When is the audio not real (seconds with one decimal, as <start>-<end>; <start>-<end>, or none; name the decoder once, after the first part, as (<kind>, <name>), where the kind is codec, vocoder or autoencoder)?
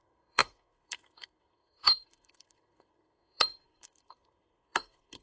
0.0-5.2 (codec, SNAC)